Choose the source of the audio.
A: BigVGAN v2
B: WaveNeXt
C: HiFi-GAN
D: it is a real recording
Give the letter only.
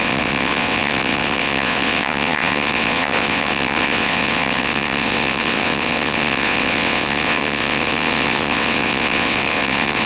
B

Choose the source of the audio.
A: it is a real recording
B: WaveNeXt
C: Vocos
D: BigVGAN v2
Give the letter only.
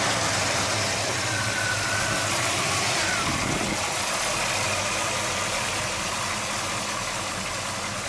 A